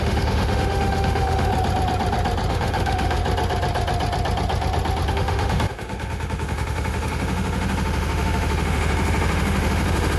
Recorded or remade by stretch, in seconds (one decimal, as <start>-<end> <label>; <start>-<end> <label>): 0.0-1.5 remade; 1.5-2.5 recorded; 2.5-3.2 remade; 3.2-5.1 recorded; 5.1-10.2 remade